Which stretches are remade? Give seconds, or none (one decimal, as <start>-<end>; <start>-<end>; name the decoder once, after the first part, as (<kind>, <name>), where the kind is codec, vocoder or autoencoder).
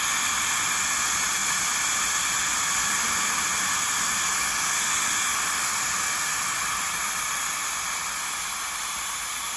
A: none